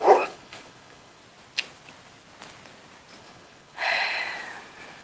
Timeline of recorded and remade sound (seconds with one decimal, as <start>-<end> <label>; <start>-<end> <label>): 0.0-1.2 remade; 1.2-3.2 recorded; 3.2-4.0 remade; 4.0-5.0 recorded